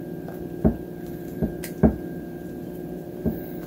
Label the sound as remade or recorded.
remade